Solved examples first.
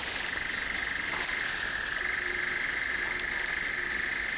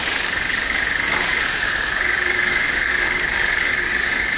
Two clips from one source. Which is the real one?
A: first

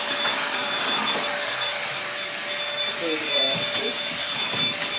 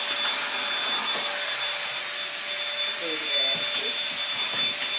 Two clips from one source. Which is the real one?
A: second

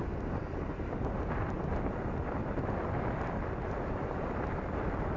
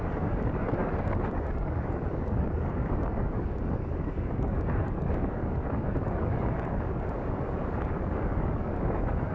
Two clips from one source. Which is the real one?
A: first